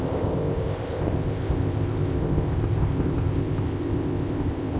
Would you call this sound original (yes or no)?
no